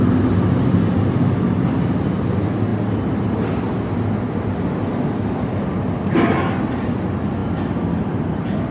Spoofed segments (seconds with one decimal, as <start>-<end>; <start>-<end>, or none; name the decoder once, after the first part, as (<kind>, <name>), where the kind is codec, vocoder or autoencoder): none